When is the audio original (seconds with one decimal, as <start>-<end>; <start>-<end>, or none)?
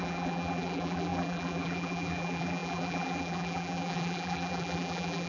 none